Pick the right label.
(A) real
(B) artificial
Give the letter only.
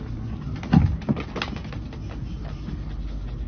A